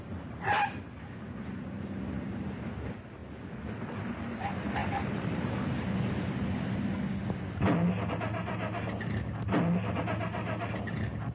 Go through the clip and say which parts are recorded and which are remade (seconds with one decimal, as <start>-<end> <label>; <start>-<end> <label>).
0.0-4.8 recorded; 4.8-5.4 remade; 5.4-11.3 recorded